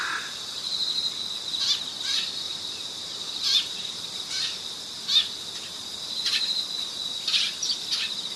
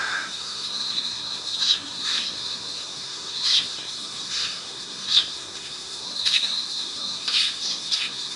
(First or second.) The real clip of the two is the first